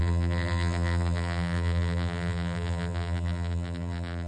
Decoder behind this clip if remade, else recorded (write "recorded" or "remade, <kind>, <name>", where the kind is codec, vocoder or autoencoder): remade, vocoder, BigVGAN v2